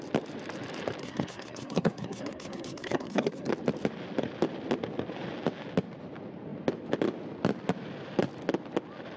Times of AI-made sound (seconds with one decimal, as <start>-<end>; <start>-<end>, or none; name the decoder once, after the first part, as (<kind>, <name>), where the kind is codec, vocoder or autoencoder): 1.0-3.5 (codec, SNAC)